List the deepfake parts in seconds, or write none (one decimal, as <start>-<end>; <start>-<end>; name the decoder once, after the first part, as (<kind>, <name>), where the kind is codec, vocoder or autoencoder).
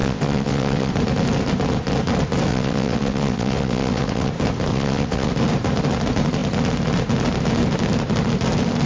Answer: 0.0-0.9 (vocoder, WaveNeXt); 2.5-4.3; 4.7-5.3